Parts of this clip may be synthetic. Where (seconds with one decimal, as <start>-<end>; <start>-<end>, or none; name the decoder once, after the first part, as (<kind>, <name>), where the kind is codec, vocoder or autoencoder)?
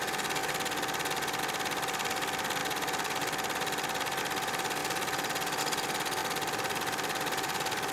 2.6-4.2 (vocoder, BigVGAN v2); 4.8-5.6; 6.2-7.9